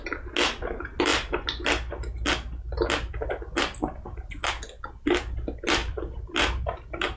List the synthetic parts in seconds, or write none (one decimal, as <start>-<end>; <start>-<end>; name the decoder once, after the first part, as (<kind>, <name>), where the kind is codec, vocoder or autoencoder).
5.8-7.2 (vocoder, BigVGAN v2)